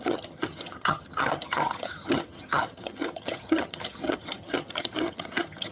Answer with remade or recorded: remade